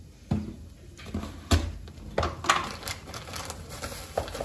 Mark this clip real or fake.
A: real